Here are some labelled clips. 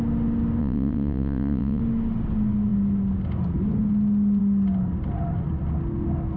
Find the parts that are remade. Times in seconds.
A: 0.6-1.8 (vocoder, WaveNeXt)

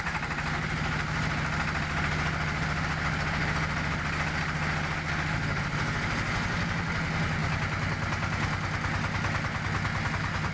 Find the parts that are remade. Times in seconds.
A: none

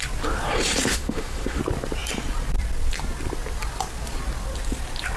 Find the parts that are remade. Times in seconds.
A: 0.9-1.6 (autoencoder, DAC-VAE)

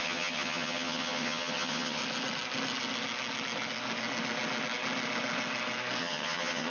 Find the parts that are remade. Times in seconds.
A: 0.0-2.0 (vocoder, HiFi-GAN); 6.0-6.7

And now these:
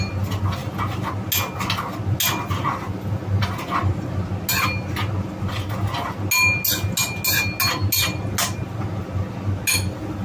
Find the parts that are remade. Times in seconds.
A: none

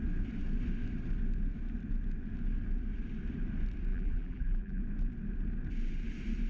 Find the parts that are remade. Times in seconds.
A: 3.9-4.8 (vocoder, BigVGAN v2)